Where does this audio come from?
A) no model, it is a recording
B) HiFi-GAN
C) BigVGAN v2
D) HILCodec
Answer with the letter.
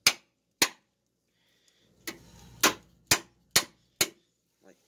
A